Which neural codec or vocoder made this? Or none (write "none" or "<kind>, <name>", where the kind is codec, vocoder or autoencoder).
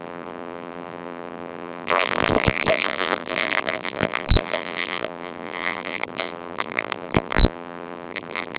vocoder, BigVGAN v2